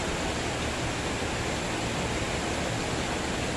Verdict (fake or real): real